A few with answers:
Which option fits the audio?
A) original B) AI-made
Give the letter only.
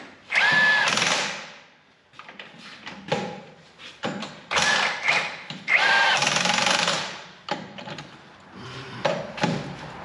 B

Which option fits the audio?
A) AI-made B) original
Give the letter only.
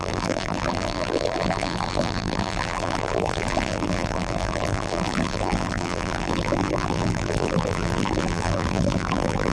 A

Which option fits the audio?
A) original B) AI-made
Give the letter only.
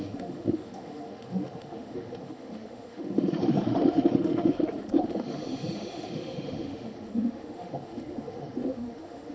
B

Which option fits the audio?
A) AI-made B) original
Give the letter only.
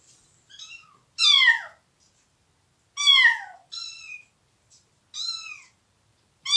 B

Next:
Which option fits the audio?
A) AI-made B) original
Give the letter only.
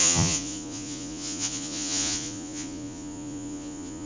A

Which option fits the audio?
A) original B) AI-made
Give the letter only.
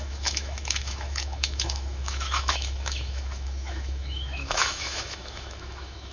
B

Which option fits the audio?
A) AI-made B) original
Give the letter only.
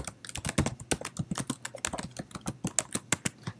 B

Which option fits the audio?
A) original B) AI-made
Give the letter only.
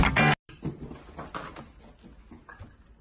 A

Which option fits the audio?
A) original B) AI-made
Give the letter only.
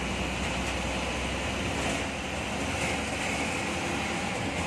A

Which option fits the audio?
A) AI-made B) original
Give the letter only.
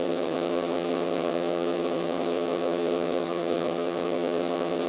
A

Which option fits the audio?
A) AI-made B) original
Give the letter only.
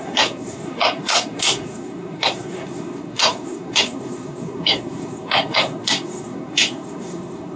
A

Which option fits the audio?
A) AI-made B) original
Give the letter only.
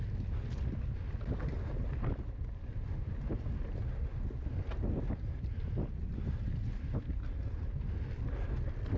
B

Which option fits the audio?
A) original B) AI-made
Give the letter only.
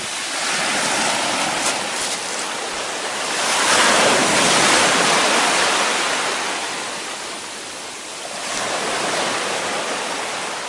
A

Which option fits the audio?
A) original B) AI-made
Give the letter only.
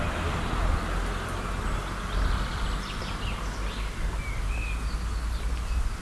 A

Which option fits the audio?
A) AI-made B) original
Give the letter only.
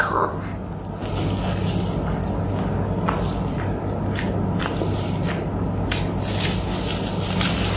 B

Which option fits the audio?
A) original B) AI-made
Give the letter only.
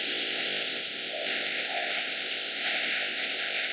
B